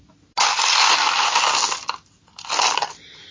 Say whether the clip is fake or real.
real